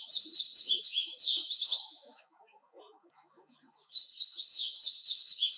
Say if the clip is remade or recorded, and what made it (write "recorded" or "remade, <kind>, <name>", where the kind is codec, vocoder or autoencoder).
remade, autoencoder, DAC-VAE